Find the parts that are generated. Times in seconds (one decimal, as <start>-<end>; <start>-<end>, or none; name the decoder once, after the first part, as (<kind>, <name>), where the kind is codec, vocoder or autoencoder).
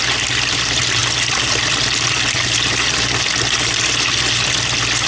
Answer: none